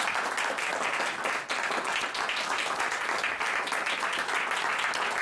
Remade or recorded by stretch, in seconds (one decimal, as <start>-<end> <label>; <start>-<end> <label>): 0.0-5.2 recorded